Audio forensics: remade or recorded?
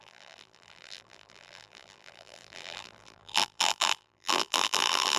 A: remade